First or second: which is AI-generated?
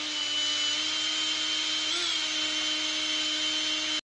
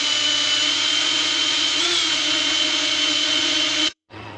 second